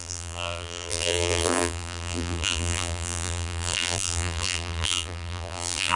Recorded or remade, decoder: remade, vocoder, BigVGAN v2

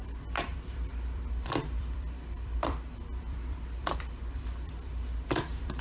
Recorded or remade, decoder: remade, vocoder, BigVGAN v2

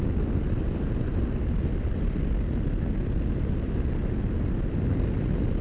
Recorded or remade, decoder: recorded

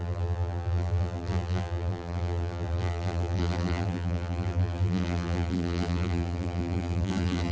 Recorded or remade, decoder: remade, vocoder, BigVGAN v2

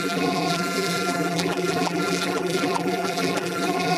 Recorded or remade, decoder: remade, vocoder, BigVGAN v2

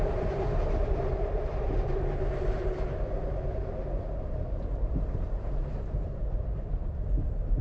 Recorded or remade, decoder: remade, vocoder, BigVGAN v2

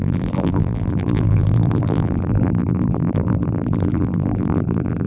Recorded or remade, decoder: remade, vocoder, BigVGAN v2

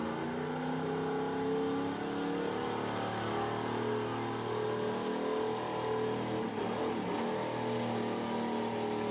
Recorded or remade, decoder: recorded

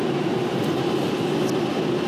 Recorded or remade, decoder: recorded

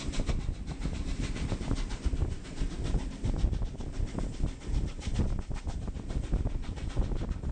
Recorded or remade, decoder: recorded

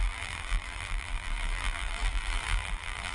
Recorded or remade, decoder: remade, vocoder, BigVGAN v2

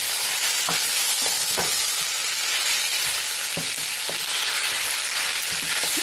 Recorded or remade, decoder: recorded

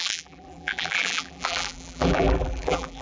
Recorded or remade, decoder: remade, vocoder, BigVGAN v2